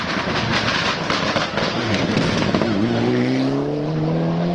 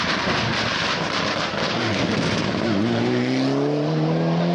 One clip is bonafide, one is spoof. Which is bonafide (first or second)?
second